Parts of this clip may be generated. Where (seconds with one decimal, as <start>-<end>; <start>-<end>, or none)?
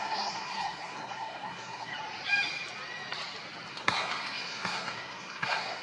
0.0-1.9; 3.7-5.8